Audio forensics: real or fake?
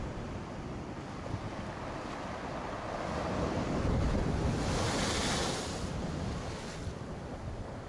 real